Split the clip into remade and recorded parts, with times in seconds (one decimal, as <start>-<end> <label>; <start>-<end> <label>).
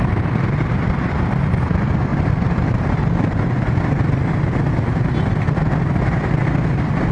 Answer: 0.0-7.1 remade